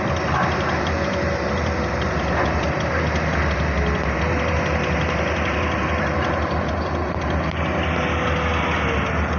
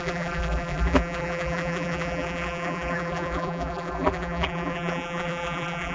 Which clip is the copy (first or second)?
second